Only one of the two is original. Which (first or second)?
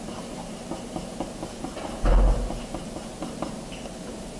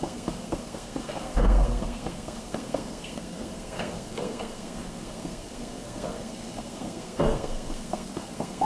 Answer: first